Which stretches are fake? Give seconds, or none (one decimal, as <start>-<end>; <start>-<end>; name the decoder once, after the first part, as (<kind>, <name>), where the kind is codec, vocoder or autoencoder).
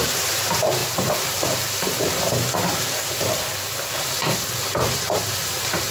0.0-5.9 (vocoder, BigVGAN v2)